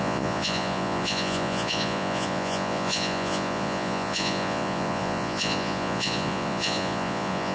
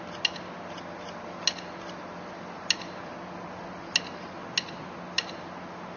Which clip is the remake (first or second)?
first